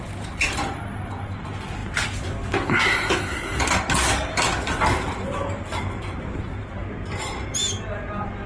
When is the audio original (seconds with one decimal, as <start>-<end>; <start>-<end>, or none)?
0.0-4.9; 6.6-8.5